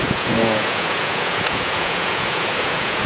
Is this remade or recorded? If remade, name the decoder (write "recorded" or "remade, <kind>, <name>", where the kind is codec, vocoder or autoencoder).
remade, vocoder, Vocos